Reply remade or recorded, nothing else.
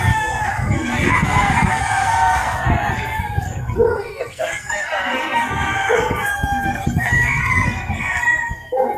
remade